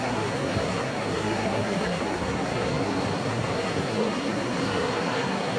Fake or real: fake